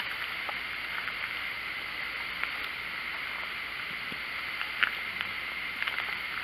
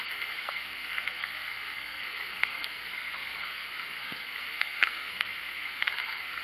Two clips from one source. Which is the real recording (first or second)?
first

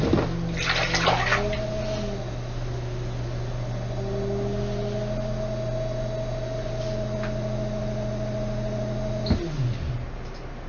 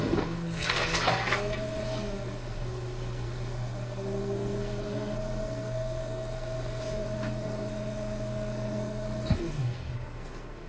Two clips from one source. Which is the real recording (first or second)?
first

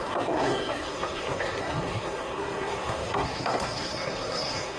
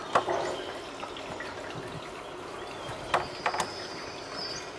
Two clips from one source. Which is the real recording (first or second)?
second